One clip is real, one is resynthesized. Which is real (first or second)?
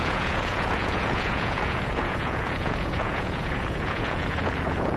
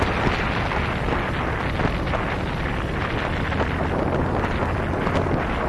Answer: second